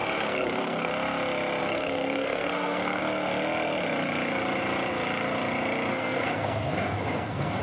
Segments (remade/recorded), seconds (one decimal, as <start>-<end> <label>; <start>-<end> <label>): 0.0-0.9 remade; 0.9-1.6 recorded; 1.6-3.0 remade; 3.0-5.9 recorded; 5.9-7.6 remade